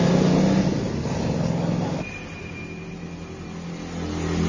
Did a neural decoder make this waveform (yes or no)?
no